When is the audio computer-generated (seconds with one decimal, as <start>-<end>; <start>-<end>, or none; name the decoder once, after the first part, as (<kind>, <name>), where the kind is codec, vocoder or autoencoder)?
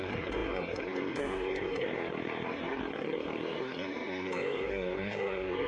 0.0-5.7 (codec, SNAC)